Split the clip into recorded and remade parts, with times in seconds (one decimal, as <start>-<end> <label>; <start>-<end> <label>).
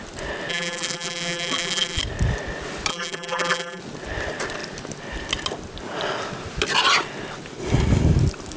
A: 0.0-0.5 recorded; 0.5-2.0 remade; 2.0-2.9 recorded; 2.9-3.8 remade; 3.8-8.6 recorded